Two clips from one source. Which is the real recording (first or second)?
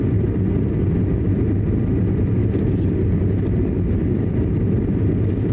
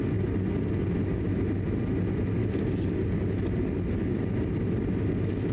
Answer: second